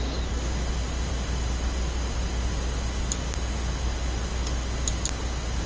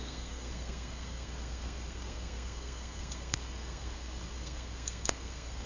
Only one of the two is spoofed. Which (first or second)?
second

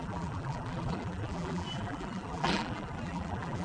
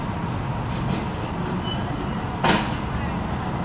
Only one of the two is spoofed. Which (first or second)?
first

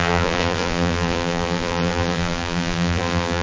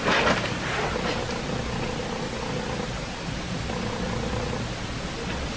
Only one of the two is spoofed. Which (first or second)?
first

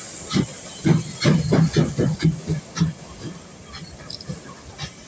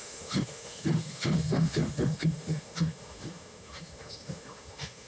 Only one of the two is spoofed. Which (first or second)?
second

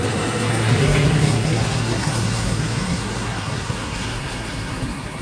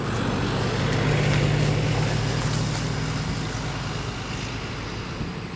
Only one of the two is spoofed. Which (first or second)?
first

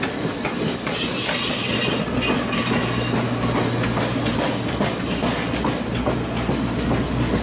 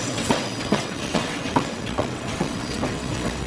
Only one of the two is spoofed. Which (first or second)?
second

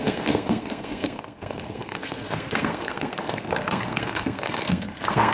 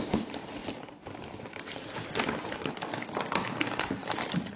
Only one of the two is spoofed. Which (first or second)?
first